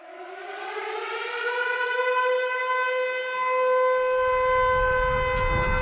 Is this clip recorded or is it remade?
recorded